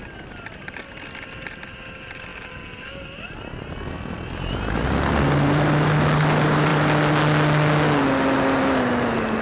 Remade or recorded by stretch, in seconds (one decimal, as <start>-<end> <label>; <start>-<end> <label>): 0.0-9.4 recorded